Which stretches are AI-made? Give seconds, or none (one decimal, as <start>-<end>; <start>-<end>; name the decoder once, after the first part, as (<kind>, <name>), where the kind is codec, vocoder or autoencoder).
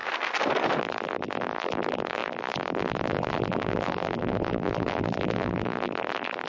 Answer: 0.8-6.5 (vocoder, BigVGAN v2)